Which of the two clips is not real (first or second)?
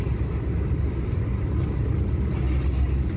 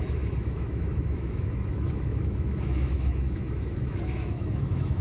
second